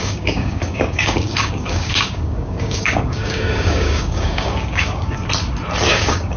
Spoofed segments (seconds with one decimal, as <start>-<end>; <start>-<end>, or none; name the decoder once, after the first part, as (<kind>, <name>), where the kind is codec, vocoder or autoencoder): 0.0-5.2 (codec, DAC); 5.9-6.4